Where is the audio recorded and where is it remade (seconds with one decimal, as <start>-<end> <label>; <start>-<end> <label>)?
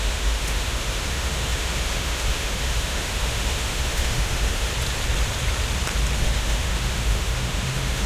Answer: 0.0-4.7 remade; 4.7-6.2 recorded; 6.2-8.1 remade